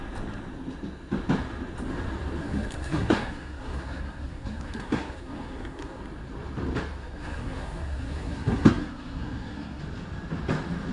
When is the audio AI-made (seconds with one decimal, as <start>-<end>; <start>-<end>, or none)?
2.4-6.0; 7.0-9.8